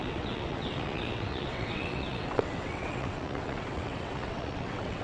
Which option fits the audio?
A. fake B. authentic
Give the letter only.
A